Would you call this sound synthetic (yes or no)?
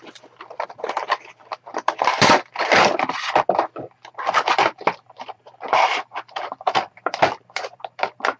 yes